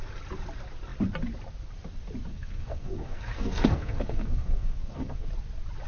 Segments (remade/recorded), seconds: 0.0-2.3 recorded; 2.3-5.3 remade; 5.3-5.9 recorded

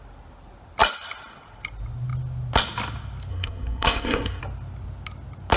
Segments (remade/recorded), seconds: 0.0-3.3 recorded; 3.3-4.4 remade; 4.4-5.6 recorded

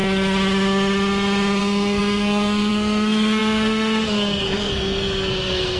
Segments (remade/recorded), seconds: 0.0-1.6 recorded; 1.6-5.8 remade

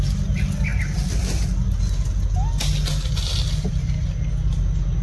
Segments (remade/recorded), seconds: 0.0-5.0 recorded